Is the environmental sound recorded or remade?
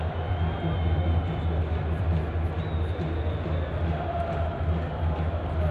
recorded